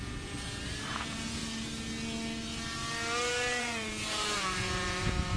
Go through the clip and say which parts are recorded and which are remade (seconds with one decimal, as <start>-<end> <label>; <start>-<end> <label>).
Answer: 0.0-1.4 remade; 1.4-3.6 recorded; 3.6-5.4 remade